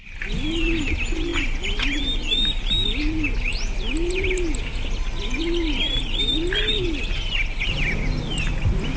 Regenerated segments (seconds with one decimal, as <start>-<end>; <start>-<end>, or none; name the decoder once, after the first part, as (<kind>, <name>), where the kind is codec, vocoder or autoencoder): none